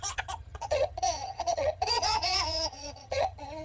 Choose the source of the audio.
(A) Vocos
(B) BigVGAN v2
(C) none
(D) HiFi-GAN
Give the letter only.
D